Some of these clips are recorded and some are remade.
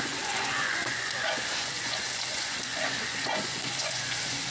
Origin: remade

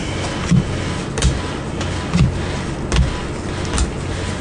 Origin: recorded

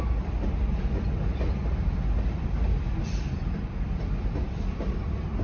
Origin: recorded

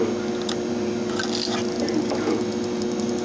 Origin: recorded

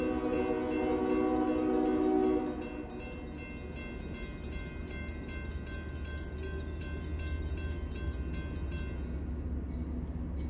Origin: recorded